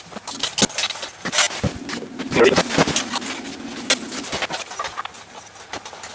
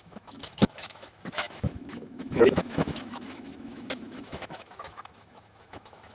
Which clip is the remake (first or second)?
second